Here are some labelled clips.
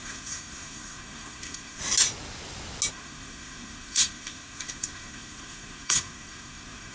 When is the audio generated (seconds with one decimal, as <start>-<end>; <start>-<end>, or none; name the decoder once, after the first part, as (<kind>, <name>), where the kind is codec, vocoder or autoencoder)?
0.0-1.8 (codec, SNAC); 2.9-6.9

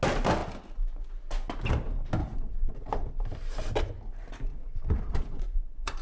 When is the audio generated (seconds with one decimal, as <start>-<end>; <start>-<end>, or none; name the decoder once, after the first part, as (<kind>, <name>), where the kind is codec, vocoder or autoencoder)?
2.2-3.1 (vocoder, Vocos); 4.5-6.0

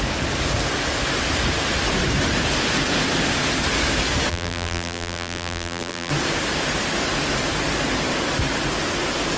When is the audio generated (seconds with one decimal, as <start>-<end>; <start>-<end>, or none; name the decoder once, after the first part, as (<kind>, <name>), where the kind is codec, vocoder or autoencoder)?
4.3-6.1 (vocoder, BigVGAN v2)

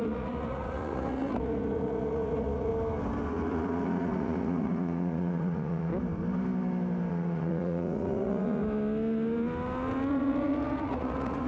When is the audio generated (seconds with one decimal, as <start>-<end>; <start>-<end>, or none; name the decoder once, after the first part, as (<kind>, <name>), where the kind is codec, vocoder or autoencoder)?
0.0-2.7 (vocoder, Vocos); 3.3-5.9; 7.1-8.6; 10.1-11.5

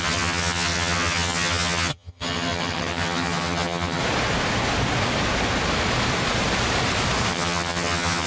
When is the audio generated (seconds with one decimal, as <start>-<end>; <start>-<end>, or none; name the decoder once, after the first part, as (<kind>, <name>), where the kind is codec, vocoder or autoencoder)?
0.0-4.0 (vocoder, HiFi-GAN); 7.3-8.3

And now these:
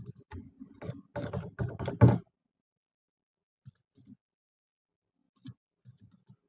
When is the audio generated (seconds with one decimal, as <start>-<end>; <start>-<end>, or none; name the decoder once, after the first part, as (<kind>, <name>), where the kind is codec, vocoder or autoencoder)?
none